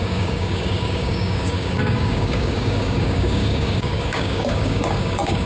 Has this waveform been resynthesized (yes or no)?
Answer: yes